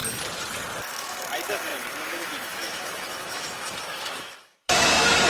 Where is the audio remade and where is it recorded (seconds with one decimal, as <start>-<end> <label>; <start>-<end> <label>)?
0.0-0.9 recorded; 0.9-5.3 remade